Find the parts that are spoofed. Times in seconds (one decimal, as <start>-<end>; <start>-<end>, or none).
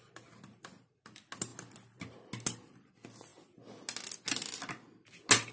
none